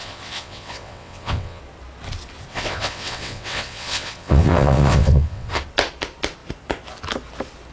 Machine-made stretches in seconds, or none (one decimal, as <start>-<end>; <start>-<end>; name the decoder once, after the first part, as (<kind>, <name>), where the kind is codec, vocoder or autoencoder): 0.0-1.6 (vocoder, WaveNeXt); 2.5-5.6